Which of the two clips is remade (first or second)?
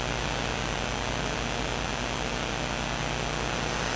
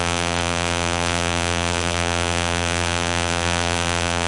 second